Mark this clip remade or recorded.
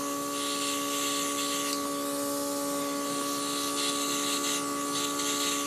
recorded